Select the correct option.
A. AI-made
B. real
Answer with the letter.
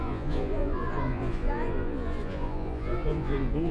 A